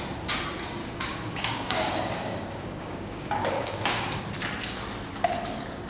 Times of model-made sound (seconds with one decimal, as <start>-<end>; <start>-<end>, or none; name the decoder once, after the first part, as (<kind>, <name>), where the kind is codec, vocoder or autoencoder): 0.8-4.2 (codec, DAC)